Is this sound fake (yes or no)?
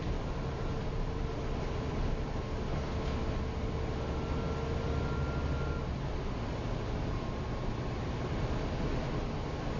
no